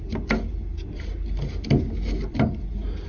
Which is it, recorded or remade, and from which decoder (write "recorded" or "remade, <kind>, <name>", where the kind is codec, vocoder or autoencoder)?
recorded